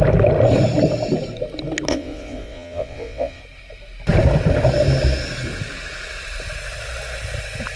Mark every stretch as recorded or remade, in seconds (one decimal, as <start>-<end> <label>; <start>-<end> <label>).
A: 0.0-1.9 recorded; 1.9-3.4 remade; 3.4-7.8 recorded